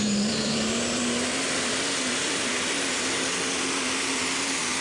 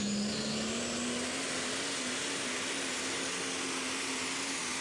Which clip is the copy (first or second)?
first